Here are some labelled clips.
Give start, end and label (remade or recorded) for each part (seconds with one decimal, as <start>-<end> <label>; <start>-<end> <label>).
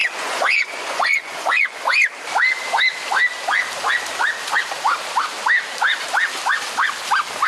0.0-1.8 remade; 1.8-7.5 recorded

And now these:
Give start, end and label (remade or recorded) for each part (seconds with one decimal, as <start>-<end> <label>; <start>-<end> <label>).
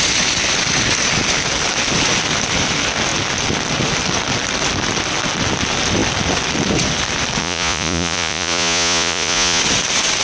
0.0-7.4 recorded; 7.4-9.6 remade; 9.6-10.2 recorded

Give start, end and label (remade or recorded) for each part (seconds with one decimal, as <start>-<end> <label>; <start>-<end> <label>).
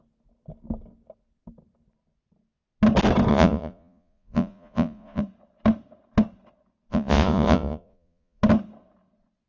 0.0-3.3 recorded; 3.3-5.2 remade; 5.2-6.9 recorded; 6.9-8.4 remade; 8.4-9.5 recorded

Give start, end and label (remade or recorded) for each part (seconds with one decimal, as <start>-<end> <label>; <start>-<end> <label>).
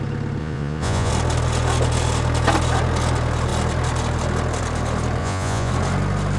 0.0-0.4 recorded; 0.4-1.1 remade; 1.1-5.2 recorded; 5.2-5.7 remade; 5.7-6.4 recorded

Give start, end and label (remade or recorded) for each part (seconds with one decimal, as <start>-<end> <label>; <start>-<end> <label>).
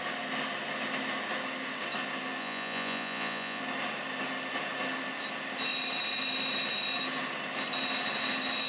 0.0-2.4 recorded; 2.4-3.6 remade; 3.6-8.7 recorded